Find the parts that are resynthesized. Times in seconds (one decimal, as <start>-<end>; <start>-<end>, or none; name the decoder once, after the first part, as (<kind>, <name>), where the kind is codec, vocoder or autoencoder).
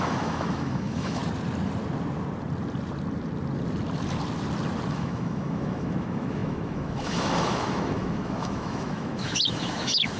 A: 0.0-1.2 (autoencoder, DAC-VAE); 4.9-10.2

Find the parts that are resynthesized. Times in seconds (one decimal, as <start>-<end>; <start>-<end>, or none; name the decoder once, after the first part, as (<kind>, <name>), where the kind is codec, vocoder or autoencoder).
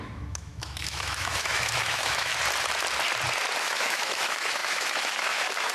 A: 0.0-2.3 (autoencoder, DAC-VAE); 3.6-5.7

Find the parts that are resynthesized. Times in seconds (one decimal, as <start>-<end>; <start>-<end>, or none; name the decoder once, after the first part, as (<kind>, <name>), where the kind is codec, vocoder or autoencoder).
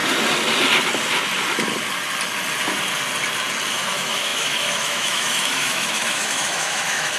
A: 3.7-7.2 (autoencoder, DAC-VAE)